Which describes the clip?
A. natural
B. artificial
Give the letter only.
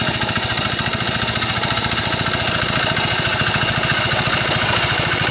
A